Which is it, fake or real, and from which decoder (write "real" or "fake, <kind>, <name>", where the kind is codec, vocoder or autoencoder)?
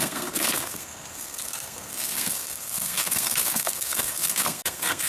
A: fake, codec, SNAC